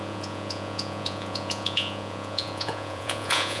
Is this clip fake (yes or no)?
yes